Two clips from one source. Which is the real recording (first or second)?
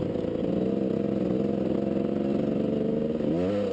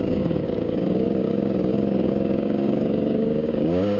first